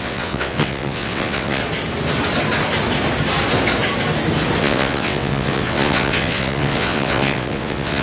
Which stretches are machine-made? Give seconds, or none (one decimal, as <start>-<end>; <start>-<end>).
0.0-1.6; 4.6-8.0